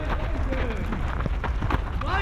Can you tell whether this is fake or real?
real